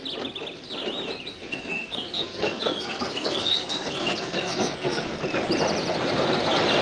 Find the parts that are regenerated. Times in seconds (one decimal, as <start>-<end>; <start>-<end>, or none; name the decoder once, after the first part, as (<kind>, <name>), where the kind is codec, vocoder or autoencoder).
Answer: 1.3-5.1 (codec, SNAC)